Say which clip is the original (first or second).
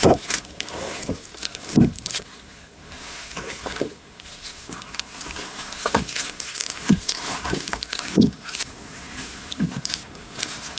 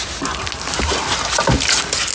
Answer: second